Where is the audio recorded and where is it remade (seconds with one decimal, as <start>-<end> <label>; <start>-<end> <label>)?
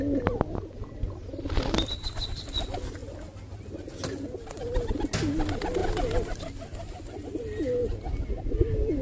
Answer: 0.0-9.0 recorded